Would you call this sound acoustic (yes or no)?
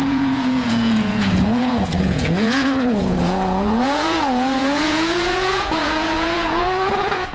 no